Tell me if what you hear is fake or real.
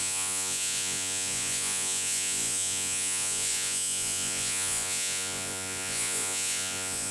fake